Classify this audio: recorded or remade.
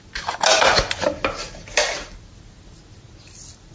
recorded